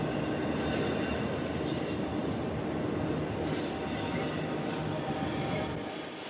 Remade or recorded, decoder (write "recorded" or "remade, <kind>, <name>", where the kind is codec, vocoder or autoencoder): recorded